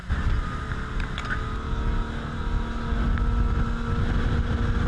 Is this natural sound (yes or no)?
yes